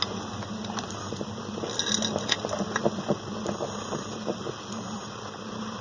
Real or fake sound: real